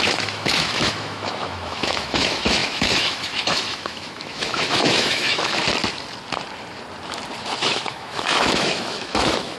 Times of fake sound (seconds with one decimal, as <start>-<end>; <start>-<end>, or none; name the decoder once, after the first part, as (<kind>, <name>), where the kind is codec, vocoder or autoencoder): 0.0-5.6 (autoencoder, DAC-VAE); 7.6-9.6